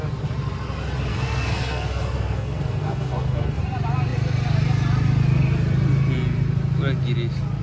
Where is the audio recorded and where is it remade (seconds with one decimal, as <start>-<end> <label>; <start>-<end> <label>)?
0.0-1.1 recorded; 1.1-3.6 remade; 3.6-7.6 recorded